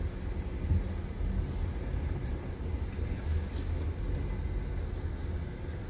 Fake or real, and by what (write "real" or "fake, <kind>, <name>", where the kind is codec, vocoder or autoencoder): real